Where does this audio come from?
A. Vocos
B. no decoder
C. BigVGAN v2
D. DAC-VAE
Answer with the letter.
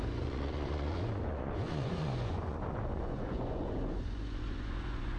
A